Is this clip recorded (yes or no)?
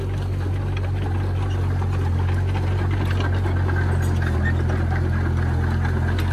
yes